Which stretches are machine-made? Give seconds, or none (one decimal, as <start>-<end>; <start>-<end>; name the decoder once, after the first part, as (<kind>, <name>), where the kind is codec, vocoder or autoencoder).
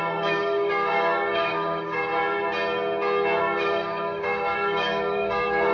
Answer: 0.0-2.1 (codec, DAC); 3.4-5.7